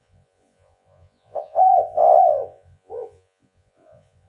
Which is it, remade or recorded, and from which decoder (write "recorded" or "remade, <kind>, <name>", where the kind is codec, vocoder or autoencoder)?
remade, vocoder, Vocos